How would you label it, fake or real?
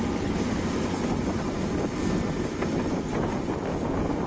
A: real